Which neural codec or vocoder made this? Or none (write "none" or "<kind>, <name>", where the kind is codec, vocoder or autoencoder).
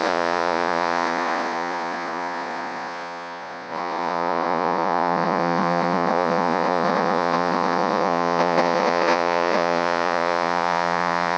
vocoder, Vocos